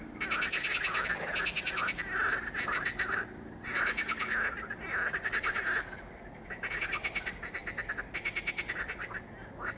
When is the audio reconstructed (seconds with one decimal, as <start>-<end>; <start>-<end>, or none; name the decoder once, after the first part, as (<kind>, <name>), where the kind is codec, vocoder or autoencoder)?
none